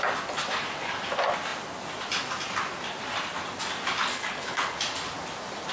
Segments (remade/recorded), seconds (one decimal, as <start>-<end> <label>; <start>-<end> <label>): 0.0-4.1 recorded; 4.1-4.8 remade; 4.8-5.7 recorded